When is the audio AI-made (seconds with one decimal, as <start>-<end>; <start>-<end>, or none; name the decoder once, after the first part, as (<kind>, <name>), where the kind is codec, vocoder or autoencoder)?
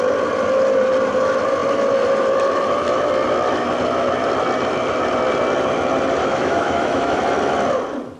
6.2-7.2 (autoencoder, DAC-VAE)